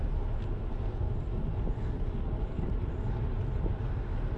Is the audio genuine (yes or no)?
yes